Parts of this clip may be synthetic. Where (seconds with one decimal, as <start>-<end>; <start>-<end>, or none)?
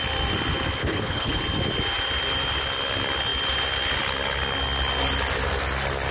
0.8-1.4